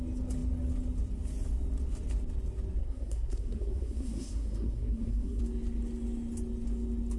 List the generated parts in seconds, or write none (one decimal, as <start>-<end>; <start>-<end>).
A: 2.8-5.4